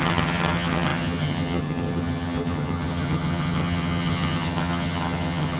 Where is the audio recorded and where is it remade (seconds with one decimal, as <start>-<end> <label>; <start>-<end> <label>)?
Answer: 0.0-5.6 remade